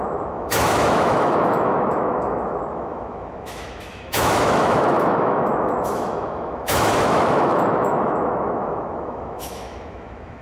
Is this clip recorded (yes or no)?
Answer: no